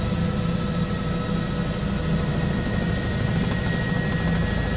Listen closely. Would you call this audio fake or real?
real